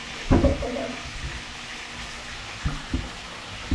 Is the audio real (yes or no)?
yes